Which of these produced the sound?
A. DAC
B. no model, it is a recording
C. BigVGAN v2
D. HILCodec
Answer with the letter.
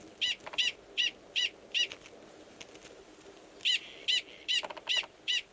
B